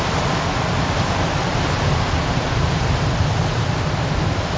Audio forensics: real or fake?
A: real